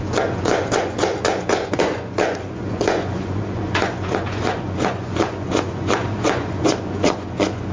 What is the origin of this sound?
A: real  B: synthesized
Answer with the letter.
B